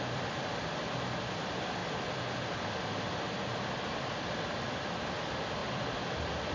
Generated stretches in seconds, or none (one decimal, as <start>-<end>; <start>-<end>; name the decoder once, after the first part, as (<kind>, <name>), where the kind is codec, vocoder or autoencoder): 0.0-5.6 (vocoder, BigVGAN v2)